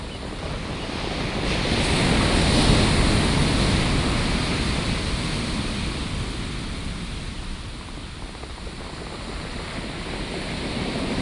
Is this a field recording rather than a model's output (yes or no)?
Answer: yes